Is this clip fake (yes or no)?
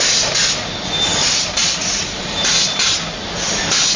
no